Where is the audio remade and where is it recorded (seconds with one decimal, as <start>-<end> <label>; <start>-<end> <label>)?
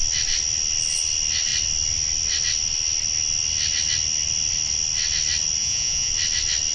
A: 0.0-5.6 recorded; 5.6-6.1 remade; 6.1-6.7 recorded